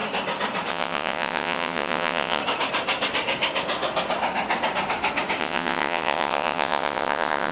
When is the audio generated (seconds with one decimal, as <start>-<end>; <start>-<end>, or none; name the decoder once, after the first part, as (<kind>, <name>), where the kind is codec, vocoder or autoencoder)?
0.7-2.4 (vocoder, WaveNeXt); 5.4-7.5